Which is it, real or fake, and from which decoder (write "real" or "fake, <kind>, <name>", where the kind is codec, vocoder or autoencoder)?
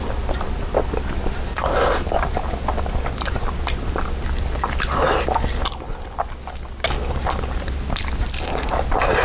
real